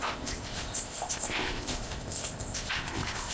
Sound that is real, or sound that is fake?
fake